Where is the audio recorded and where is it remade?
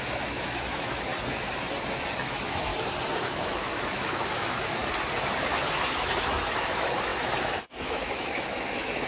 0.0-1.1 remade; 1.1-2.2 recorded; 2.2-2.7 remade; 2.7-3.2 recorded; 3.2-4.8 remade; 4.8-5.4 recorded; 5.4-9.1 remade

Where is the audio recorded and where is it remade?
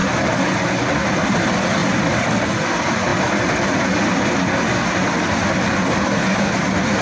0.0-0.9 recorded; 0.9-3.1 remade; 3.1-5.5 recorded; 5.5-7.0 remade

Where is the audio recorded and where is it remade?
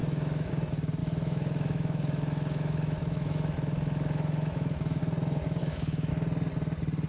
0.0-0.5 remade; 0.5-1.0 recorded; 1.0-5.0 remade; 5.0-5.6 recorded; 5.6-6.1 remade; 6.1-7.1 recorded